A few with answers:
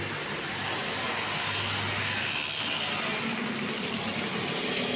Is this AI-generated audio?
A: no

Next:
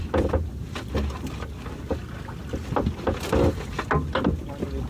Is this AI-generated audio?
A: no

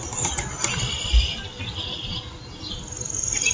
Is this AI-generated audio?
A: no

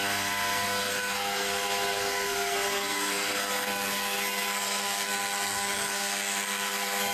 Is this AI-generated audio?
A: yes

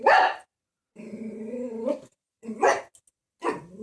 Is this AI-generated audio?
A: no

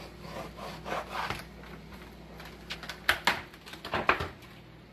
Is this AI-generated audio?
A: no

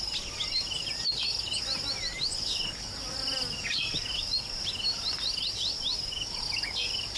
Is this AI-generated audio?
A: no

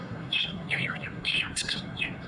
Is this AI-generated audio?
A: yes